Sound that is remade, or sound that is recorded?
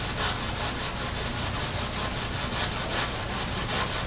recorded